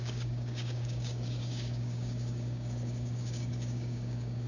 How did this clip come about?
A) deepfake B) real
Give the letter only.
A